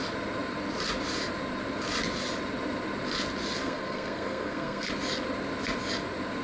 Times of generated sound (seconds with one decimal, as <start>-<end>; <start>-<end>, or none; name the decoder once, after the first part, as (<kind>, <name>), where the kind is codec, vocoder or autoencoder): 3.6-4.9 (codec, SNAC)

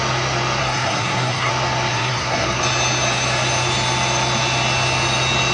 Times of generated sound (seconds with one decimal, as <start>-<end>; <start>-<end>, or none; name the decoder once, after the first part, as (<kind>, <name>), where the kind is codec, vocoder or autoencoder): 0.6-1.5 (codec, SNAC); 1.9-2.6

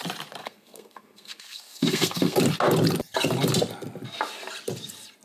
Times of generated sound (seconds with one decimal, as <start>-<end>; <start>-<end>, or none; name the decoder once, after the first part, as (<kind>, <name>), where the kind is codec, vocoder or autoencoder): 0.4-2.4 (codec, SNAC)

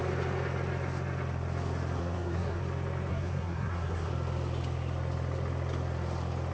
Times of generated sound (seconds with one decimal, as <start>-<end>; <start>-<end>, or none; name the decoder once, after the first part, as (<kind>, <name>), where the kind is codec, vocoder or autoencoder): 2.0-2.6 (codec, SNAC); 3.1-4.1

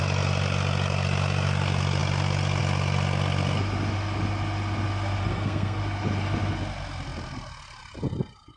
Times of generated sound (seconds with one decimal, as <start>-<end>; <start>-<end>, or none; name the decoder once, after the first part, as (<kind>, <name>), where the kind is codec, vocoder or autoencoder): 5.2-5.8 (codec, SNAC)

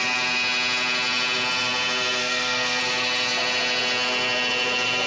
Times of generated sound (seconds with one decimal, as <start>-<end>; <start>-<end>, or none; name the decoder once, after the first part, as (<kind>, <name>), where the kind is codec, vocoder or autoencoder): 2.2-2.8 (codec, SNAC)

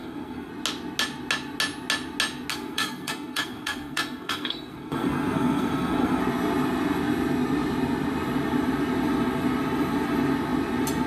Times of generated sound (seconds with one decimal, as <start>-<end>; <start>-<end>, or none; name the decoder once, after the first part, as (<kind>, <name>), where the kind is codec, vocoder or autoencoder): 0.0-0.5 (codec, SNAC); 2.5-6.2

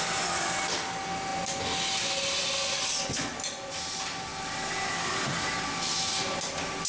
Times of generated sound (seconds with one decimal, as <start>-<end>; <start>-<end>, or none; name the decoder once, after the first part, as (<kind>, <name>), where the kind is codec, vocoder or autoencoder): none